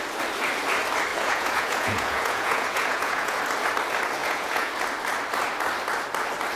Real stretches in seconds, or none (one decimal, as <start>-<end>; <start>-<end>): 0.0-1.1; 3.4-4.2; 4.7-6.6

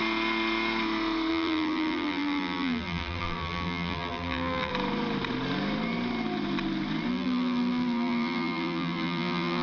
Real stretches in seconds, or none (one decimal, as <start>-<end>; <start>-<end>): 0.0-1.3; 4.7-7.1

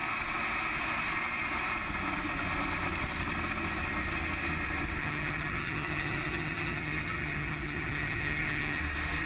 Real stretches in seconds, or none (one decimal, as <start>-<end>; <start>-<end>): 0.0-5.0; 8.8-9.3